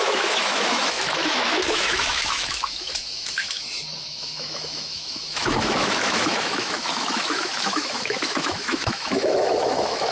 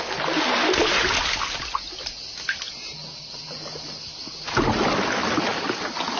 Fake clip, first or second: first